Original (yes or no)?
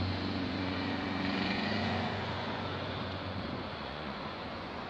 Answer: no